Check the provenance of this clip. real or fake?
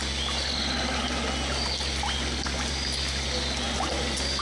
real